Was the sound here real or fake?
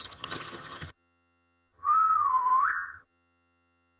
fake